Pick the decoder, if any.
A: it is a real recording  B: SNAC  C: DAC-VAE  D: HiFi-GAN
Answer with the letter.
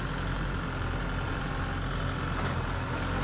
A